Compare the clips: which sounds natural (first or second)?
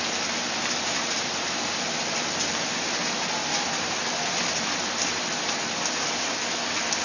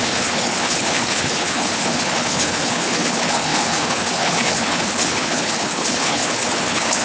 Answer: first